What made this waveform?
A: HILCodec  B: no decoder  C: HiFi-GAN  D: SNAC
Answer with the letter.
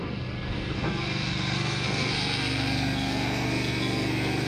D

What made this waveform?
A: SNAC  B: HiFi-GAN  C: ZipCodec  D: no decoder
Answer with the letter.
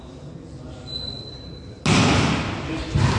D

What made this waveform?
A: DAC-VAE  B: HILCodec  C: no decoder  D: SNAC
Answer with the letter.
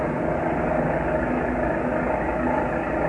C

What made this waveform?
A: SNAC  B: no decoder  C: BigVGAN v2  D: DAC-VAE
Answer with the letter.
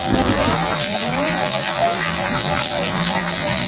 C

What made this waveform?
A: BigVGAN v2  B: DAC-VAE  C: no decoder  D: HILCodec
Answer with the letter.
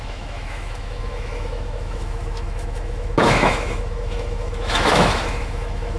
B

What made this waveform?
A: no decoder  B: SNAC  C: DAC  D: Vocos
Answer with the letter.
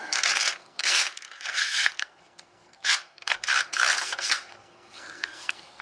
B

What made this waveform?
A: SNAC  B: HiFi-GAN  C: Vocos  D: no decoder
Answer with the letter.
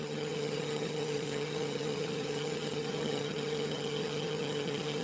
B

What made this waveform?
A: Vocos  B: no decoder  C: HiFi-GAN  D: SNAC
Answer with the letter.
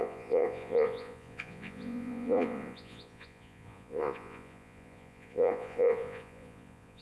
A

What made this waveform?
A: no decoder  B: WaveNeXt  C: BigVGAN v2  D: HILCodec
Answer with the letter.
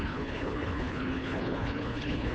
D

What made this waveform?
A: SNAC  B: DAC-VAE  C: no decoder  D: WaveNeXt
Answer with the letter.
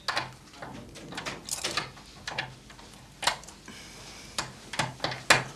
C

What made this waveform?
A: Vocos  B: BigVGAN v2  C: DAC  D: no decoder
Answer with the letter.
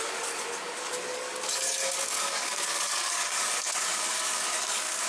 C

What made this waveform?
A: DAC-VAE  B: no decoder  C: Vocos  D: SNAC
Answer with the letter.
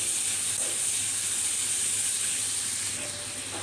B